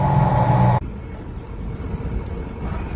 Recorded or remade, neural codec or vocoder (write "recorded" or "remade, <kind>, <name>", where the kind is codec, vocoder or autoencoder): recorded